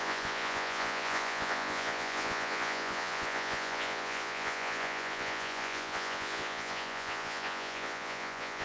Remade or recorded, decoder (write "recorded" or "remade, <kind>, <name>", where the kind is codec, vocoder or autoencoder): remade, vocoder, Vocos